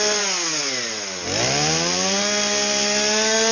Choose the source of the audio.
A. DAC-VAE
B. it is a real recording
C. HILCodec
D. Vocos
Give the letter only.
B